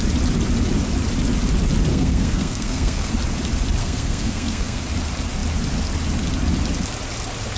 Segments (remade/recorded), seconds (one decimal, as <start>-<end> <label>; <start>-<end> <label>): 0.0-1.9 recorded; 1.9-3.1 remade; 3.1-3.8 recorded; 3.8-4.8 remade; 4.8-7.6 recorded